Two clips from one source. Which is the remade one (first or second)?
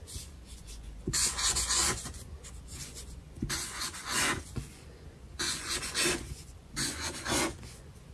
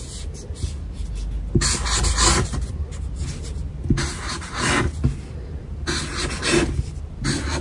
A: first